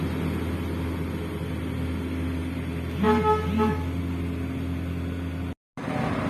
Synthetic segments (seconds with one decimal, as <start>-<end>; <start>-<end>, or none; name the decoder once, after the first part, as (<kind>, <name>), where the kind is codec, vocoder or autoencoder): none